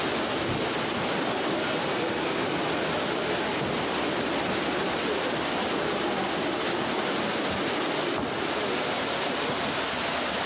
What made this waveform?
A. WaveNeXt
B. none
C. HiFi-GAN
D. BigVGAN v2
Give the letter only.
D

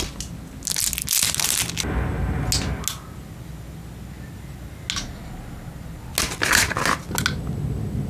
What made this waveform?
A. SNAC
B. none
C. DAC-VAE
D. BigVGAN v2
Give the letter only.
B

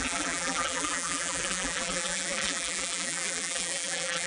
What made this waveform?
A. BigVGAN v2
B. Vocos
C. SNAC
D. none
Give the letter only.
A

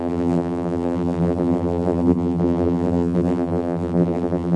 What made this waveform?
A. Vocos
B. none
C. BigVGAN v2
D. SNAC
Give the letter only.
C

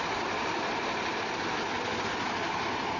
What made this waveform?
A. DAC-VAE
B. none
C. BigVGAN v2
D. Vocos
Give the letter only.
B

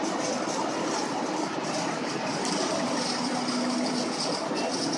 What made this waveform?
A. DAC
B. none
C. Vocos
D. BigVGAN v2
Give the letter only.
B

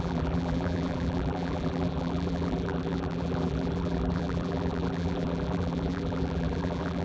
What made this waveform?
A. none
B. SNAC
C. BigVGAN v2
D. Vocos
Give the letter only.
C